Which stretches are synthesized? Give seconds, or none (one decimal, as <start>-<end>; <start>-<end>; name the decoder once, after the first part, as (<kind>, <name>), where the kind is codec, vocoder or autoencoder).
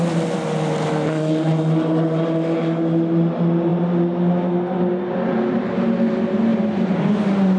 none